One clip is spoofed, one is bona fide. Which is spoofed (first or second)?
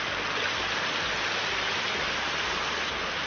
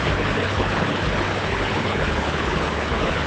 second